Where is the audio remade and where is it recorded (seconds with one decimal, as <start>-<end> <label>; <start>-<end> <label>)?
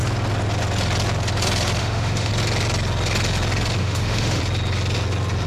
0.0-1.8 recorded; 1.8-2.3 remade; 2.3-3.8 recorded; 3.8-4.4 remade; 4.4-5.5 recorded